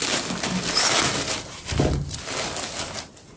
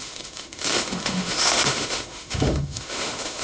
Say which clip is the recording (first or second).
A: first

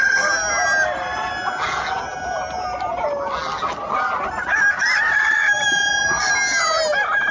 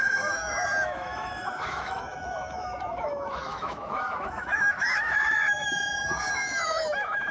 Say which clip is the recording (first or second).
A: first